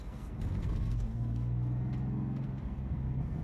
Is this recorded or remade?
remade